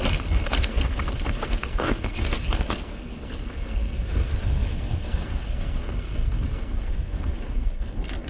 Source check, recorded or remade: remade